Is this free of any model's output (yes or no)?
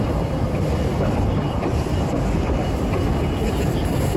no